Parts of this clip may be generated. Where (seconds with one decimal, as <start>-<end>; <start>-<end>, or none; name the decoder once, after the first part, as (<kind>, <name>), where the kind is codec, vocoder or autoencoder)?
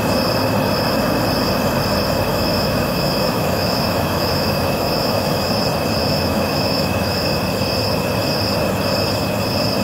2.3-5.5 (autoencoder, DAC-VAE); 6.0-7.4